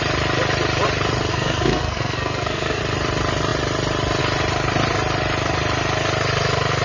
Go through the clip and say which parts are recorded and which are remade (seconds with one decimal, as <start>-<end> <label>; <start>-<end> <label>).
0.0-1.3 recorded; 1.3-2.8 remade; 2.8-6.8 recorded

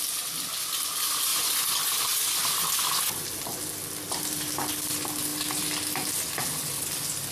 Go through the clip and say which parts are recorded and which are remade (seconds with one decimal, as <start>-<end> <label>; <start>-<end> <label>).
0.0-7.3 recorded

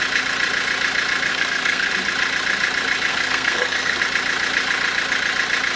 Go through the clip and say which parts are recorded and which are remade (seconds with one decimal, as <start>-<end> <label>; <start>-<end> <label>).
0.0-1.3 recorded; 1.3-1.9 remade; 1.9-3.1 recorded; 3.1-4.0 remade; 4.0-5.8 recorded

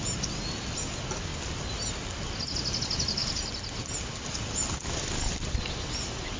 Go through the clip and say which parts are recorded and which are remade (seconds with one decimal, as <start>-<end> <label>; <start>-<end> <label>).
0.0-6.4 recorded

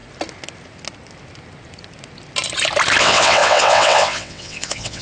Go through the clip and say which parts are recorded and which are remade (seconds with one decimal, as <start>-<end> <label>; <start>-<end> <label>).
0.0-3.0 recorded; 3.0-5.0 remade